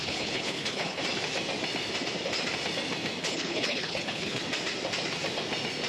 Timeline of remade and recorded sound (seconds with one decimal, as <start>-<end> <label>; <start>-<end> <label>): 0.0-1.0 remade; 1.0-3.2 recorded; 3.2-4.4 remade; 4.4-5.9 recorded